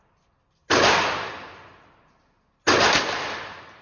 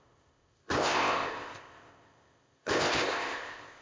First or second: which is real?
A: first